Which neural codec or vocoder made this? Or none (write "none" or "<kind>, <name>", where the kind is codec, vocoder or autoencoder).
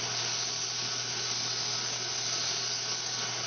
none